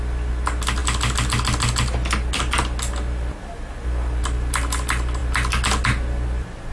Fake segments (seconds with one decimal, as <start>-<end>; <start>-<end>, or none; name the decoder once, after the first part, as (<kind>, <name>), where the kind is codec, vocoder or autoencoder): none